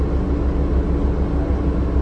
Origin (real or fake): real